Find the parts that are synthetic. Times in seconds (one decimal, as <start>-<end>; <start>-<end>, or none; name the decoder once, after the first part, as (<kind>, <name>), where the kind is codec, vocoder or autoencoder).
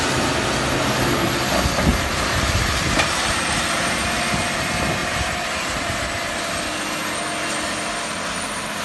1.9-3.8 (vocoder, BigVGAN v2); 5.0-6.5